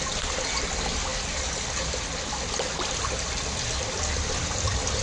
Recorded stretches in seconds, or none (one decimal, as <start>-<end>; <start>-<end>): 0.0-5.0